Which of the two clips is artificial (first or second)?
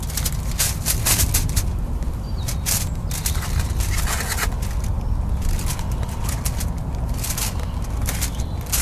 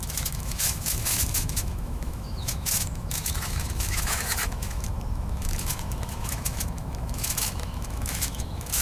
second